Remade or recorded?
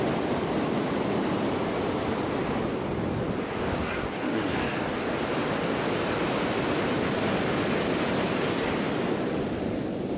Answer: recorded